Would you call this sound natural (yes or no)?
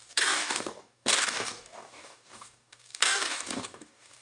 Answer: no